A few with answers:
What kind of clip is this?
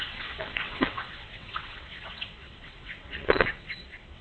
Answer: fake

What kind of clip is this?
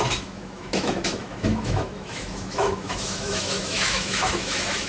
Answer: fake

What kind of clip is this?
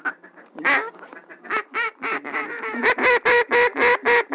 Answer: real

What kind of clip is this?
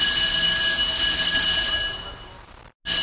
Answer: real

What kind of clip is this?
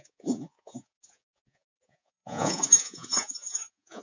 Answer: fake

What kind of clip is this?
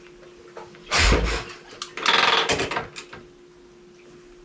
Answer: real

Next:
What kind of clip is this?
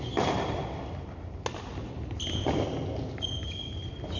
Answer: real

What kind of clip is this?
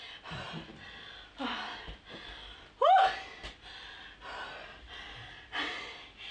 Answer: real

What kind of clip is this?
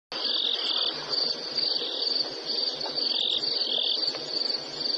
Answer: real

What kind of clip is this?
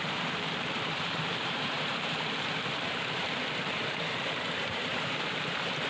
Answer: fake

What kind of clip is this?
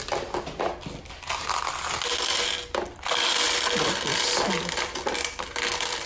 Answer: real